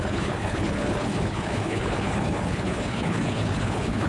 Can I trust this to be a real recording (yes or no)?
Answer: no